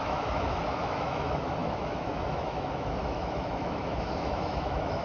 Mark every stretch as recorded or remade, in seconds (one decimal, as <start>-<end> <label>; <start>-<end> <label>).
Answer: 0.0-5.0 remade